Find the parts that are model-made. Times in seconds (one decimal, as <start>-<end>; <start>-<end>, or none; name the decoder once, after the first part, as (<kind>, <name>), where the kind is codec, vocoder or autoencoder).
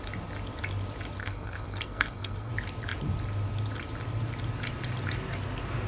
1.2-2.5 (codec, SNAC)